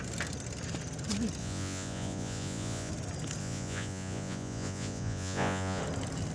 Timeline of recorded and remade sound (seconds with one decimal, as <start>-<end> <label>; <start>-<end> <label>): 0.0-1.4 recorded; 1.4-2.9 remade; 2.9-3.4 recorded; 3.4-5.8 remade; 5.8-6.3 recorded